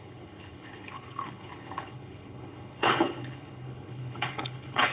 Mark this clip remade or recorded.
remade